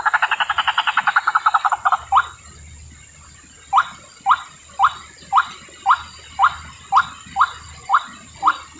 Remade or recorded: recorded